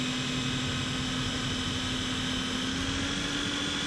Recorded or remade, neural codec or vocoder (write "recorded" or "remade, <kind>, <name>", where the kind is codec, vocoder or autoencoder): recorded